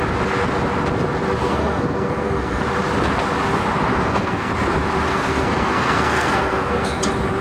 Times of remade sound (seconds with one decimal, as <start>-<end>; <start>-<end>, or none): 1.4-2.6; 3.9-4.5; 5.1-7.0